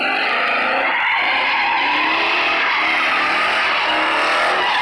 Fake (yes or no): no